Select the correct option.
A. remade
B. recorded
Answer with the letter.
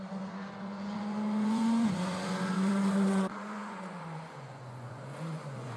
A